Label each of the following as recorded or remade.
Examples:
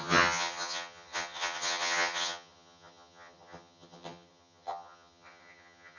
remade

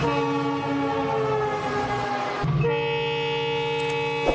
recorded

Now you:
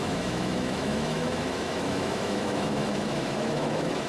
remade